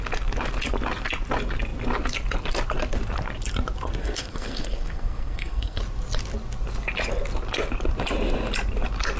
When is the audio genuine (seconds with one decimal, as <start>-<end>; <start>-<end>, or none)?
0.0-4.0; 5.8-9.2